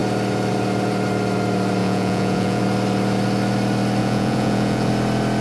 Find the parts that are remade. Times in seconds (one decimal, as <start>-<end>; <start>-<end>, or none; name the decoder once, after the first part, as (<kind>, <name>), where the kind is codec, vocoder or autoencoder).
1.8-2.6 (vocoder, Vocos); 4.0-4.9